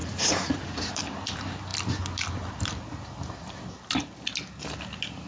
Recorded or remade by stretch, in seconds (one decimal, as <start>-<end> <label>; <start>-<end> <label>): 0.0-0.8 remade; 0.8-5.3 recorded